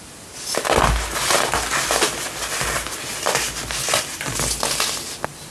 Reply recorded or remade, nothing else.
recorded